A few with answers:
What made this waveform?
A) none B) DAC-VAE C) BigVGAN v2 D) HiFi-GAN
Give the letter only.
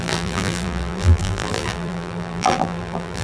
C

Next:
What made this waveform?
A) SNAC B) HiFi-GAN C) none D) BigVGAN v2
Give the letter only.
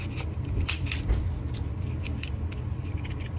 D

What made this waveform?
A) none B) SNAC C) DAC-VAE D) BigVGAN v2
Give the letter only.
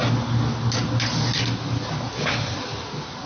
A